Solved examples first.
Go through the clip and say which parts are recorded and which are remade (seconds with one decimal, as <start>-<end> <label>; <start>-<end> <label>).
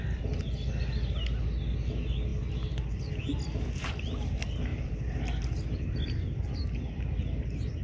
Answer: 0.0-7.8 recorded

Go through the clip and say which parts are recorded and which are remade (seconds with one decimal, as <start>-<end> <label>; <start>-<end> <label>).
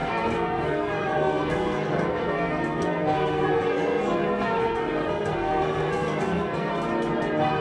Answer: 0.0-6.7 remade; 6.7-7.6 recorded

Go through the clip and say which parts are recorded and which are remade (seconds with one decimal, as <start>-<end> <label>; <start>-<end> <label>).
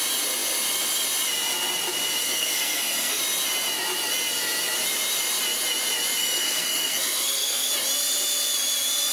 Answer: 0.0-2.2 recorded; 2.2-3.2 remade; 3.2-6.2 recorded; 6.2-7.7 remade; 7.7-9.1 recorded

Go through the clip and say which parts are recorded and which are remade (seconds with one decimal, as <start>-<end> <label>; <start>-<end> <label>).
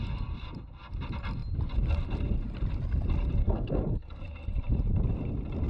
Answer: 0.0-3.4 recorded; 3.4-4.2 remade; 4.2-5.7 recorded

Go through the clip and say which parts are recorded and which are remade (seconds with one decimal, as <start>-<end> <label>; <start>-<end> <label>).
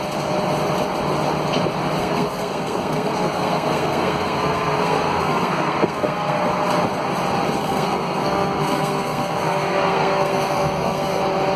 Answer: 0.0-2.0 recorded; 2.0-6.4 remade; 6.4-7.6 recorded; 7.6-11.2 remade; 11.2-11.6 recorded